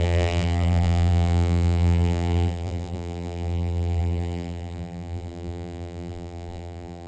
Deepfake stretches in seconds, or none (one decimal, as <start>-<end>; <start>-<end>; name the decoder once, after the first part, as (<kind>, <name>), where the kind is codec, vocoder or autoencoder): 0.0-7.1 (vocoder, BigVGAN v2)